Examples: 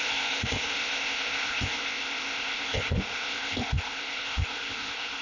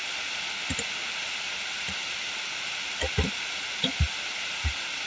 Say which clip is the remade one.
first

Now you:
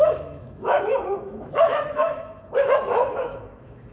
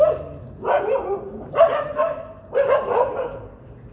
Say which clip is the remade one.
first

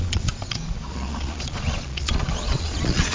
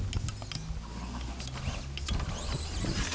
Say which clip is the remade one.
first